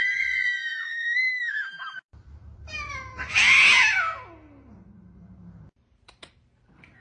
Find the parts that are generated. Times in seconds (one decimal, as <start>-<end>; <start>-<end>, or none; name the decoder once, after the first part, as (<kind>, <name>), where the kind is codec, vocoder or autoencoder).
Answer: 0.0-3.4 (vocoder, BigVGAN v2); 5.0-7.0